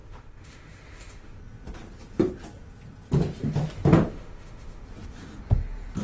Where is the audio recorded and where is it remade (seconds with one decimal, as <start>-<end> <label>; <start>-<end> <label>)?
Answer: 0.0-1.4 remade; 1.4-4.1 recorded; 4.1-4.8 remade; 4.8-6.0 recorded